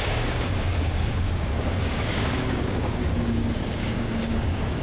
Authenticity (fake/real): fake